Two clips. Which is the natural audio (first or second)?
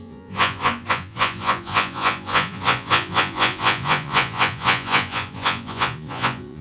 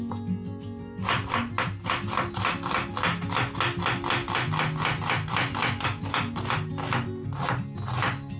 second